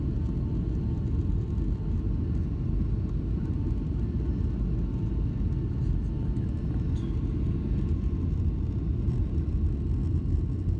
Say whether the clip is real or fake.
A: real